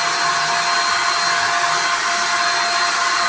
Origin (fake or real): real